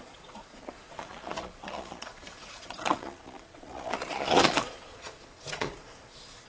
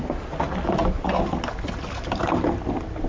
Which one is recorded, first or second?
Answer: second